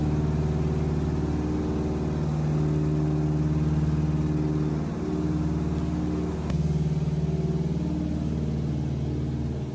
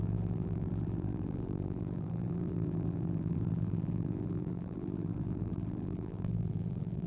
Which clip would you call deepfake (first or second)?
second